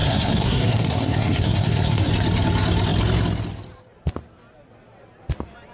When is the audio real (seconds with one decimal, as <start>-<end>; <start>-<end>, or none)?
2.1-5.7